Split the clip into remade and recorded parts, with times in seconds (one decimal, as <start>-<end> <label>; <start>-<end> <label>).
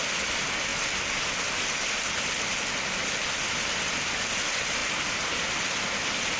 0.0-6.4 recorded